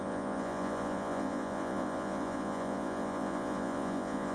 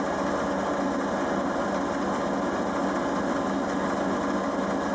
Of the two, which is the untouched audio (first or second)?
second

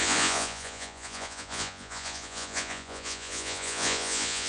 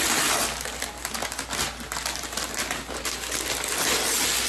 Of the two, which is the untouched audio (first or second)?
second